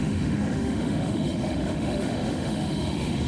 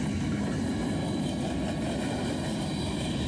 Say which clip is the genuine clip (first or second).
second